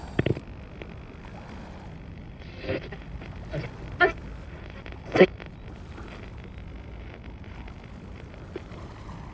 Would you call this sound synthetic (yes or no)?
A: no